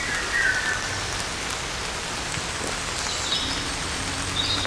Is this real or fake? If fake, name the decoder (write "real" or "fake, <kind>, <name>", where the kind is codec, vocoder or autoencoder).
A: real